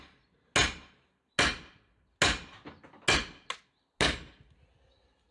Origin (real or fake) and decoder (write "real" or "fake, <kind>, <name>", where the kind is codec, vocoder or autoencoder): real